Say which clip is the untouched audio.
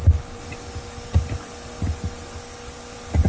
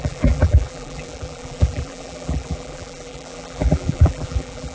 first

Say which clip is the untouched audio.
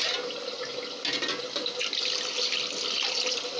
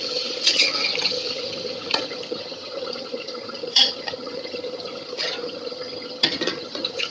first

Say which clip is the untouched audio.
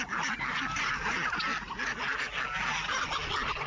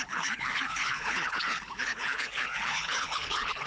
first